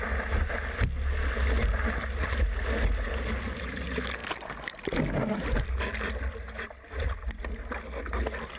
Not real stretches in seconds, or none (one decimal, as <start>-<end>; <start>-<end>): none